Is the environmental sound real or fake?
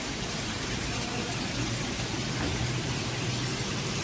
real